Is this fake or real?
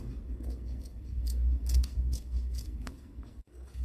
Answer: fake